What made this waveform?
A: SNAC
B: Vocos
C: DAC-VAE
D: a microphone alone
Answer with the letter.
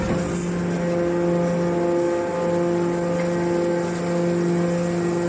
D